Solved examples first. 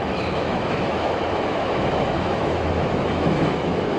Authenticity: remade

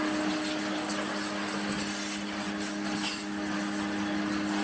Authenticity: recorded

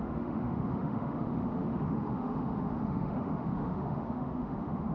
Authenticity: remade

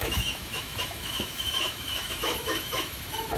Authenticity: remade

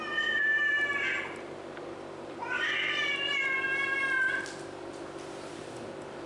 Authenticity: recorded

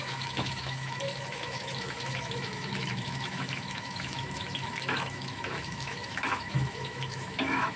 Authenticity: remade